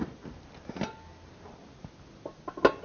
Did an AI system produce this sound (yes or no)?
no